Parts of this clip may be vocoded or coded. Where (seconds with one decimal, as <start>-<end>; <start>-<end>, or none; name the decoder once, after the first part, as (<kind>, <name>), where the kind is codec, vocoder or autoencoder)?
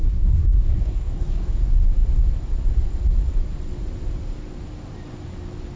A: 0.0-1.5 (codec, SNAC)